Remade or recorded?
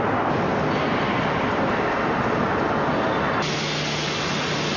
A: recorded